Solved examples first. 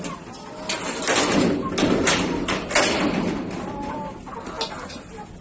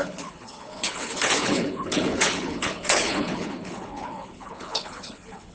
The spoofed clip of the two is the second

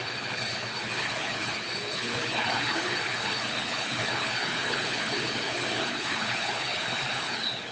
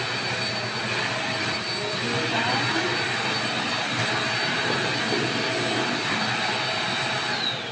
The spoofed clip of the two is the first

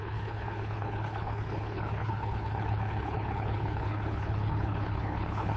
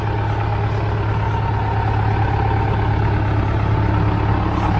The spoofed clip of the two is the first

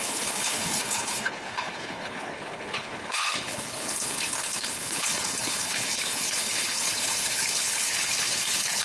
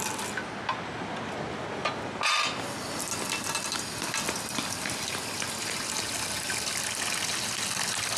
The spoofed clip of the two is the first